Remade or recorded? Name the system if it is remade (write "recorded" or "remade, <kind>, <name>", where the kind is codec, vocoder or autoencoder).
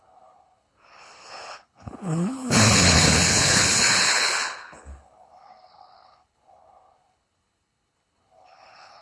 remade, codec, HILCodec